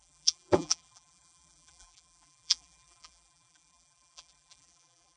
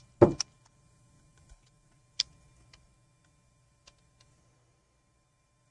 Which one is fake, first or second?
first